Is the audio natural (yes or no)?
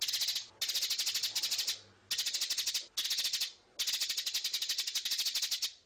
yes